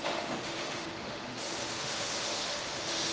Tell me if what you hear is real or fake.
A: fake